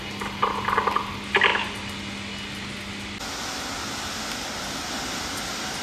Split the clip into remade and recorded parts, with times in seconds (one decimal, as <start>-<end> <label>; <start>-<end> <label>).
0.0-5.8 recorded